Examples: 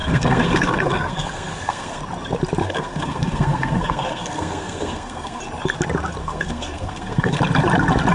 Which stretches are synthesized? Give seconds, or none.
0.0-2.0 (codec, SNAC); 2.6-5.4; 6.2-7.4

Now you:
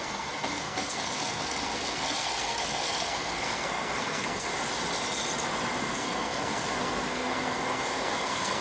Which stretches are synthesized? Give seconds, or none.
0.0-4.5 (codec, SNAC); 5.8-8.6